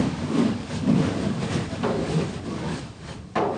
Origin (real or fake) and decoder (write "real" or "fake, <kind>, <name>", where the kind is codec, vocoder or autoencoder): fake, codec, DAC